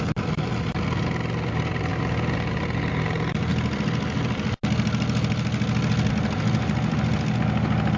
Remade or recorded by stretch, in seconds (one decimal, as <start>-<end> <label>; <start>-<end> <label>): 0.0-8.0 recorded